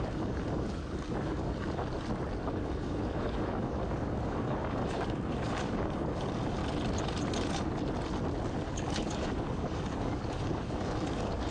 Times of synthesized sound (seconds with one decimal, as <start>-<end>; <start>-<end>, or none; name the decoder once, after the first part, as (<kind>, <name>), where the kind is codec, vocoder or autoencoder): 0.0-1.8 (codec, DAC); 2.4-6.6; 8.5-11.5